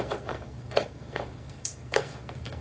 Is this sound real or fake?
fake